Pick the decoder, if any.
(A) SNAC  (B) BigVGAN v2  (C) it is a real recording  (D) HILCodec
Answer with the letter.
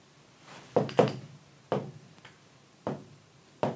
C